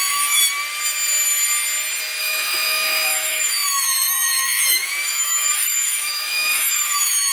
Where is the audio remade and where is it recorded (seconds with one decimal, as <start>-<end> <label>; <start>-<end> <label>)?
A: 0.0-0.4 remade; 0.4-2.2 recorded; 2.2-7.3 remade